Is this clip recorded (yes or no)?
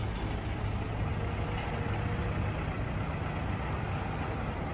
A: yes